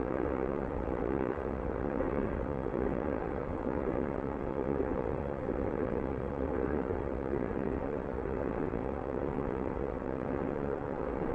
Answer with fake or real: fake